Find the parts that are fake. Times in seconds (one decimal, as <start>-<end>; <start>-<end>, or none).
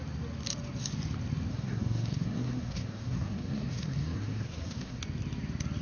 1.5-5.0